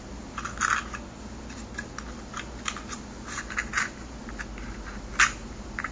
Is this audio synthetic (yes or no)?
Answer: no